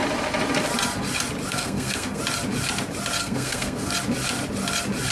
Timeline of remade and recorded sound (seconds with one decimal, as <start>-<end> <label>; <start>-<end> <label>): 0.0-1.5 recorded; 1.5-2.2 remade; 2.2-3.2 recorded; 3.2-3.9 remade; 3.9-5.1 recorded